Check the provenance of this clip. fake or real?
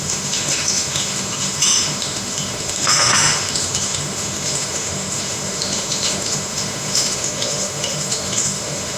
fake